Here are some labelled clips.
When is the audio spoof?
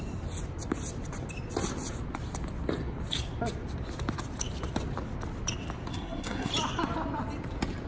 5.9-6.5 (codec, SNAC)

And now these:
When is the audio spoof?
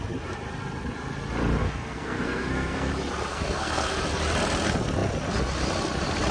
1.6-2.9 (codec, SNAC); 3.3-4.0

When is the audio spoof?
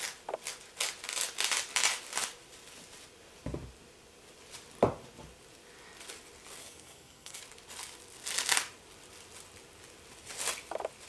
6.6-7.4 (codec, SNAC)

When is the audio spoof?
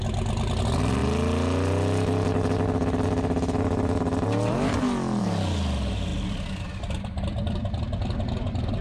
none